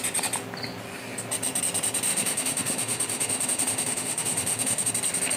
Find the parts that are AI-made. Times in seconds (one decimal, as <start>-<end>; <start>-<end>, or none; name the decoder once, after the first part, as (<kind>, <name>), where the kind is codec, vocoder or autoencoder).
2.1-4.9 (autoencoder, DAC-VAE)